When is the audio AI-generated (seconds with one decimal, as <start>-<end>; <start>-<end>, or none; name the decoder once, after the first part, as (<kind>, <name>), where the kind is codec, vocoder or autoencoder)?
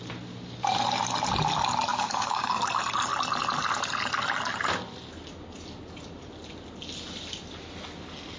1.9-2.6 (codec, DAC)